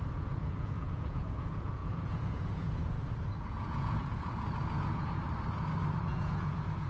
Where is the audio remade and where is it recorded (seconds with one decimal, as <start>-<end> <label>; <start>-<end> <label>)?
0.0-5.1 remade; 5.1-6.0 recorded; 6.0-6.9 remade